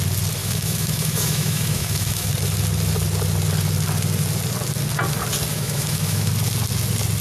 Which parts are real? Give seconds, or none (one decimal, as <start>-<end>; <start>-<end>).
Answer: 0.0-0.4; 2.3-5.5; 6.3-7.2